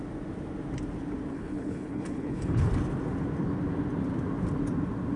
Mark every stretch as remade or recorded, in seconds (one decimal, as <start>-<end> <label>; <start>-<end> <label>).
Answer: 0.0-1.3 recorded; 1.3-2.7 remade; 2.7-5.2 recorded